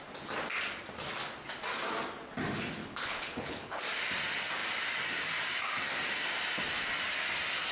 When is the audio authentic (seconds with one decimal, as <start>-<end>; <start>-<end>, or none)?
0.0-2.8; 3.8-7.7